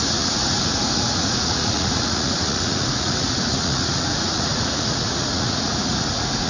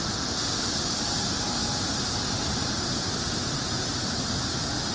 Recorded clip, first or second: second